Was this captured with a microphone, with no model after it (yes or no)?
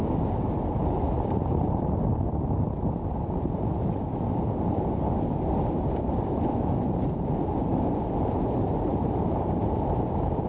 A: yes